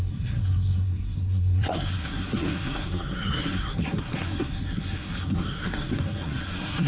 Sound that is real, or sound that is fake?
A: fake